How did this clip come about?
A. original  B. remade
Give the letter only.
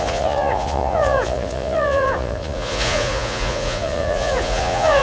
B